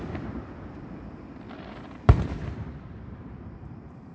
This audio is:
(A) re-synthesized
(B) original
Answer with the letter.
A